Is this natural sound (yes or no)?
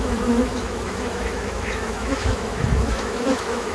no